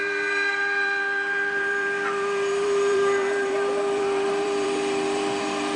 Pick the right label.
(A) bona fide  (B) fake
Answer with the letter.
B